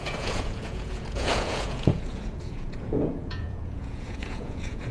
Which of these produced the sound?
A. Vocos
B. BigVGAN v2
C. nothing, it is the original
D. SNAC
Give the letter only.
A